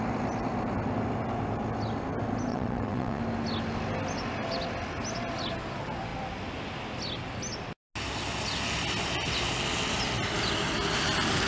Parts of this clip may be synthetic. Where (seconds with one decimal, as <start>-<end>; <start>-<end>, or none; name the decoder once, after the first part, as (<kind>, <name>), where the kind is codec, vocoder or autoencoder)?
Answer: 2.5-3.2 (vocoder, WaveNeXt)